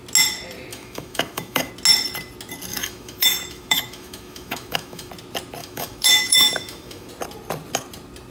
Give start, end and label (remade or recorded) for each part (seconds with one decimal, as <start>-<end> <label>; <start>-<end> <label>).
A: 0.0-0.7 recorded; 0.7-1.7 remade; 1.7-2.7 recorded; 2.7-5.1 remade; 5.1-5.6 recorded; 5.6-7.1 remade; 7.1-8.3 recorded